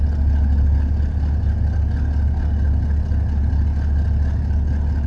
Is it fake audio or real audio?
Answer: real